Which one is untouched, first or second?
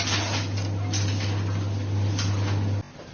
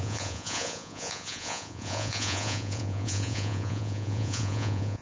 first